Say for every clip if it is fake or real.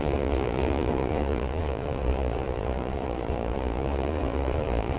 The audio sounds fake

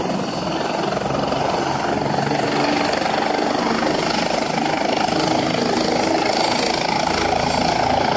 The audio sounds real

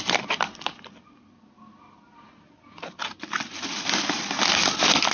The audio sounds real